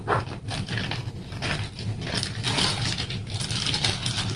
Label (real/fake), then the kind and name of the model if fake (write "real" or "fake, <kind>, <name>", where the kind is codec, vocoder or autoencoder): real